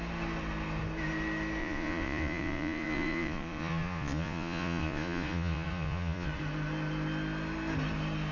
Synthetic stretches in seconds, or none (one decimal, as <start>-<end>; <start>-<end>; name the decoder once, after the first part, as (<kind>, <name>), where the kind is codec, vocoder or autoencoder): 1.6-6.4 (vocoder, Vocos)